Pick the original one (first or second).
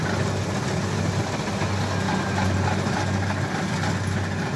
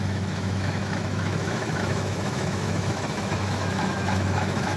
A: first